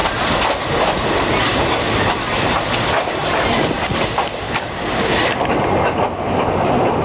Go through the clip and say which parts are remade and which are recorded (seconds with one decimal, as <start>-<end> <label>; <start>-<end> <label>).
0.0-1.2 recorded; 1.2-3.2 remade; 3.2-7.0 recorded